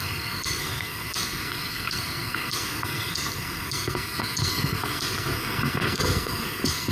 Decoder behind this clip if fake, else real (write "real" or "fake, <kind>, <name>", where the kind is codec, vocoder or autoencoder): fake, codec, SNAC